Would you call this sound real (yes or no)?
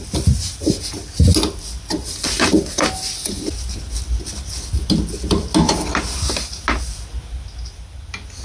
yes